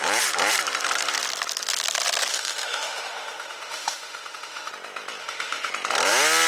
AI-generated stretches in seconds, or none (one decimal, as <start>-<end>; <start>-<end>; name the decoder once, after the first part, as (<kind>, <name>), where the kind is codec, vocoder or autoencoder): 2.3-4.7 (autoencoder, DAC-VAE); 5.2-5.7